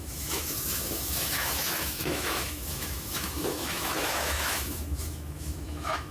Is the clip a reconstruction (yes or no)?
yes